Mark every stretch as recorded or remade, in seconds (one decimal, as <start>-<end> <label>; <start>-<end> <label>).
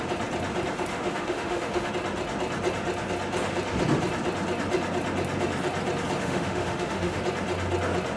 0.0-0.9 recorded; 0.9-1.9 remade; 1.9-6.2 recorded; 6.2-7.2 remade; 7.2-8.2 recorded